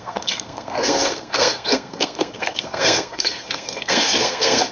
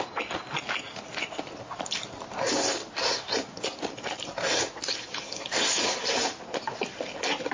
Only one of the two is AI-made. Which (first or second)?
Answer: first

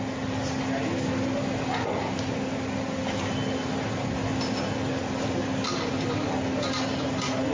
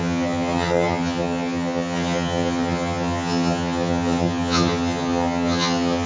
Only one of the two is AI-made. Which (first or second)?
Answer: second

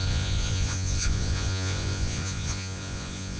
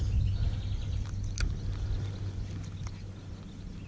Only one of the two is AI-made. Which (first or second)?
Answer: first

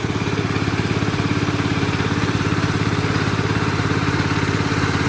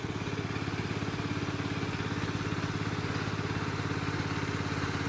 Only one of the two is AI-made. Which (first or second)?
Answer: first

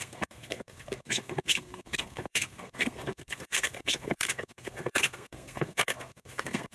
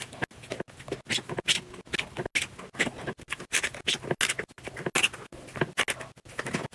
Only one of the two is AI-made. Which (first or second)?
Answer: first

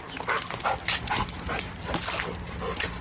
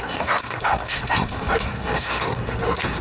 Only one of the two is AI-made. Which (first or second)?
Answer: second